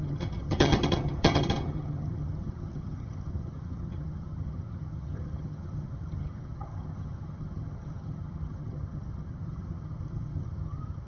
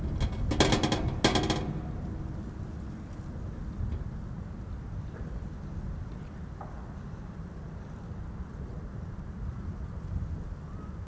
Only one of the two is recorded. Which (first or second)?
second